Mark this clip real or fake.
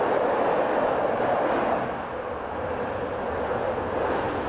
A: real